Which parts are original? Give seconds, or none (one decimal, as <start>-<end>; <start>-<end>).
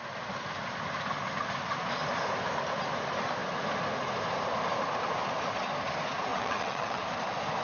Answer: 0.0-6.3; 7.0-7.6